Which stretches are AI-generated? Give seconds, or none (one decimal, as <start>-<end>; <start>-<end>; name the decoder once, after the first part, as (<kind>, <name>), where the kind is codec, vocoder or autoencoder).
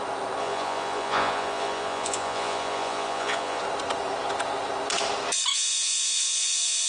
0.4-3.6 (vocoder, Vocos); 5.5-6.9